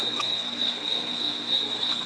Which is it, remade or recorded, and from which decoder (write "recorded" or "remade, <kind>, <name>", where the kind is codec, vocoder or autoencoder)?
remade, codec, SNAC